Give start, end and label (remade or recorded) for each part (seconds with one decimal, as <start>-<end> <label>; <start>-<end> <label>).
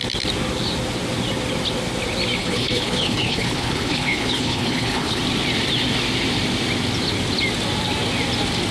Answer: 0.0-2.4 recorded; 2.4-5.2 remade; 5.2-8.7 recorded